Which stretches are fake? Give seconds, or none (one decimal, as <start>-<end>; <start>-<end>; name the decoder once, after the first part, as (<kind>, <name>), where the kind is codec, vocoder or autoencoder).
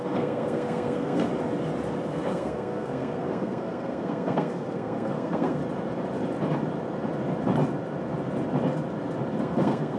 0.0-1.3 (codec, SNAC); 2.1-5.6; 9.4-10.0